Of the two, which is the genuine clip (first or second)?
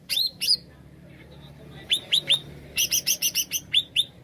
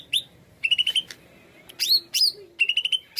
second